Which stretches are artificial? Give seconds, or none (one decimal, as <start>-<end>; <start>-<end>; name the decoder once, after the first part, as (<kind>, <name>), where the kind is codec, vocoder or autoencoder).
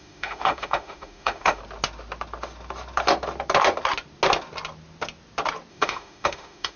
0.0-1.6 (autoencoder, DAC-VAE); 5.7-6.8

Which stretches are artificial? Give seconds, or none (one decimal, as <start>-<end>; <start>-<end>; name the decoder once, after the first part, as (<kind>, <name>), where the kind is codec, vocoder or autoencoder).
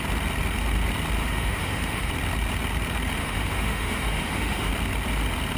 1.2-2.1 (autoencoder, DAC-VAE); 3.2-4.7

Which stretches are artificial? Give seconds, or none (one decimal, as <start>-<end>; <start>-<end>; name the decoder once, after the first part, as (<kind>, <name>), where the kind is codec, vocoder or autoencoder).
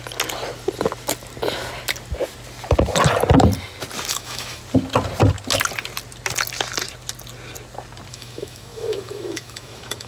4.1-4.6 (autoencoder, DAC-VAE); 8.1-10.1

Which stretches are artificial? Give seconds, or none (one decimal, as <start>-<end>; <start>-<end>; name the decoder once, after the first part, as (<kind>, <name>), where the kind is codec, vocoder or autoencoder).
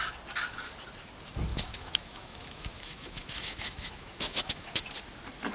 1.5-4.8 (autoencoder, DAC-VAE)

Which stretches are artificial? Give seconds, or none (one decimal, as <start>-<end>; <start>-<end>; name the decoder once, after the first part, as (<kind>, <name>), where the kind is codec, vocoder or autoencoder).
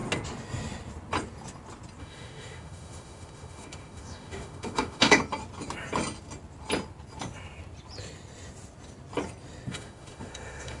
2.0-5.2 (autoencoder, DAC-VAE); 9.7-10.8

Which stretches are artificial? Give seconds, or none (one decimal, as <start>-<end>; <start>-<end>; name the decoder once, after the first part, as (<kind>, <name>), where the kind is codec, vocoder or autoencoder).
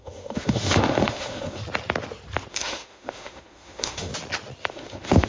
0.0-1.6 (autoencoder, DAC-VAE); 2.5-4.1; 4.7-5.3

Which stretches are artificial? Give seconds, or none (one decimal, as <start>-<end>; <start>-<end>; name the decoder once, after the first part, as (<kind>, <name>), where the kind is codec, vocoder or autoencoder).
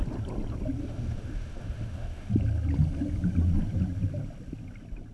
0.8-2.3 (autoencoder, DAC-VAE)